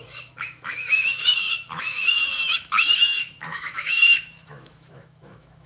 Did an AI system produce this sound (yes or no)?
yes